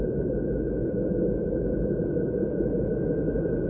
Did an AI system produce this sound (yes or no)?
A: no